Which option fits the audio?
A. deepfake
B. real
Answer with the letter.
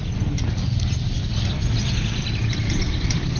B